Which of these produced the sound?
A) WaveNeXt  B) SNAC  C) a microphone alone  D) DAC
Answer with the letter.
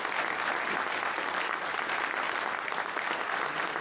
C